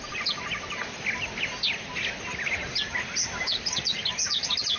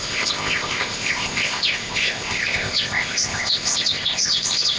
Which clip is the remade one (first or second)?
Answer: second